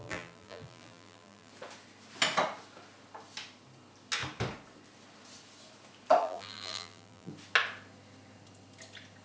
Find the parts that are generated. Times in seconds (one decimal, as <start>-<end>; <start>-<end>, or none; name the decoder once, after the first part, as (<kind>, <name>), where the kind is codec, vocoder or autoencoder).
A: 0.0-1.5 (vocoder, BigVGAN v2); 6.2-7.3